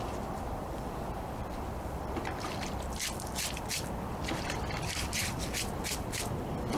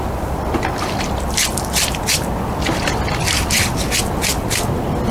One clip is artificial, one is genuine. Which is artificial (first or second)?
first